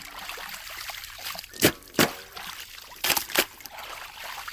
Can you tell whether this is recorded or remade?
remade